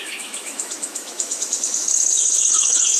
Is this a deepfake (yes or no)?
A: yes